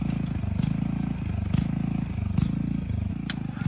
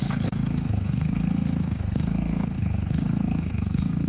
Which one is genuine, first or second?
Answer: first